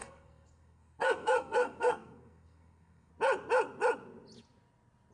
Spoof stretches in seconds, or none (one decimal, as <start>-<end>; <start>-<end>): 0.0-3.1